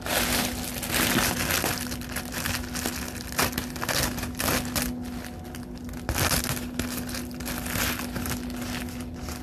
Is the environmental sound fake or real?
real